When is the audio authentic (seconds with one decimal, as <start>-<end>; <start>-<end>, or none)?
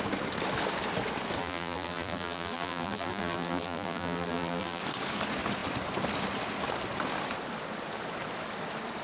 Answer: 0.0-1.4; 4.8-9.0